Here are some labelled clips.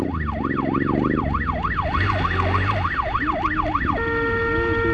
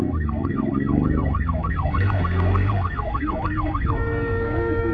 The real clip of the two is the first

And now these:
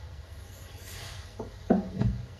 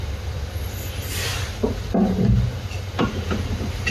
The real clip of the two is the second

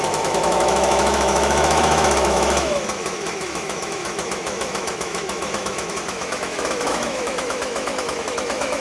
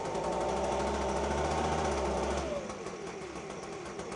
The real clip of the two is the second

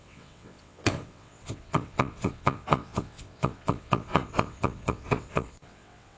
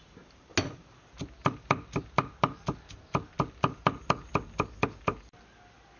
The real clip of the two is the second